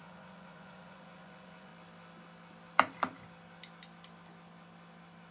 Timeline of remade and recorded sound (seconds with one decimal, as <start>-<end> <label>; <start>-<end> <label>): 0.0-1.7 remade; 1.7-5.3 recorded